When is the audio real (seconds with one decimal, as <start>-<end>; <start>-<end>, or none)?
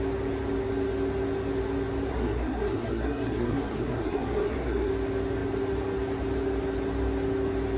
0.0-2.1; 4.9-7.8